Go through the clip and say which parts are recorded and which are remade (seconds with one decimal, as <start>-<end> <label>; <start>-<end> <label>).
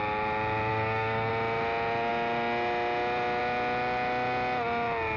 0.0-0.7 recorded; 0.7-1.3 remade; 1.3-5.2 recorded